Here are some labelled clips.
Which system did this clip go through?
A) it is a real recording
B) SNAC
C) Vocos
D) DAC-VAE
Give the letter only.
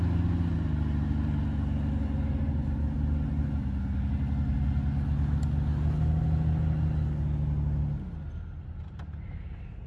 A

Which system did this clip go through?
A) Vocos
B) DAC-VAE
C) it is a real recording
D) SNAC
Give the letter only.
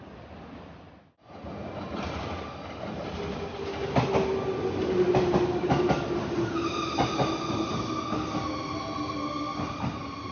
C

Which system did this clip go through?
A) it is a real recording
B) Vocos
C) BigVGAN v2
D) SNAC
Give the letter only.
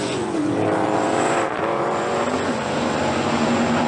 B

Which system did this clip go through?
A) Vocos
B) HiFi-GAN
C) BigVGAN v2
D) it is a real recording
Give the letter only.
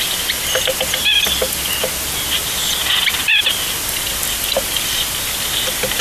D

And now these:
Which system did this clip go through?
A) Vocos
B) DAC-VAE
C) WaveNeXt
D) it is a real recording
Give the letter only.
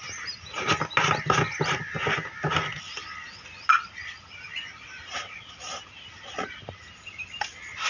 D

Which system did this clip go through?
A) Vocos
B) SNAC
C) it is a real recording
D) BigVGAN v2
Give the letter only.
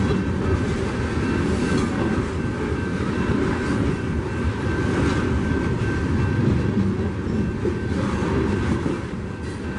C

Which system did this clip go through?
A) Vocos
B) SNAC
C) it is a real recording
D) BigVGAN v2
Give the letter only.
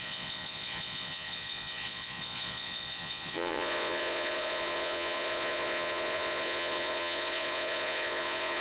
A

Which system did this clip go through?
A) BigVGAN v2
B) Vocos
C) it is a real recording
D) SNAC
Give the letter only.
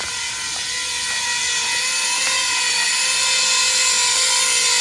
C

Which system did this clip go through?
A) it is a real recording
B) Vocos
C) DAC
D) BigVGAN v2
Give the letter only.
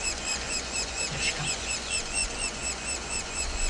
B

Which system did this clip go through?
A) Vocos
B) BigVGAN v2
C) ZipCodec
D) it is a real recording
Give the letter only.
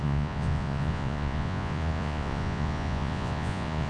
A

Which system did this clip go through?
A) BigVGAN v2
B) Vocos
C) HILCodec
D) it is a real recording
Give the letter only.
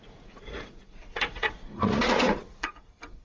B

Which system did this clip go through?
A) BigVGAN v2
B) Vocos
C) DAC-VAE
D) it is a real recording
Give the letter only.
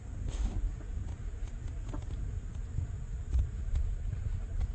D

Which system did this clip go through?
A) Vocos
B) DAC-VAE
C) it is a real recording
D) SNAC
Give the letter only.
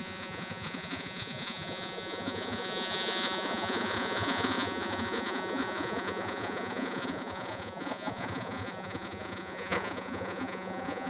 A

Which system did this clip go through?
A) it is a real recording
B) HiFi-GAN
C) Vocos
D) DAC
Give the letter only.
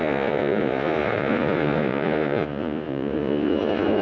C